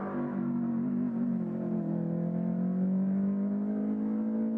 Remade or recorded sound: recorded